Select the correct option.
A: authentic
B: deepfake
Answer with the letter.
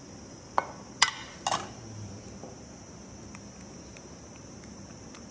A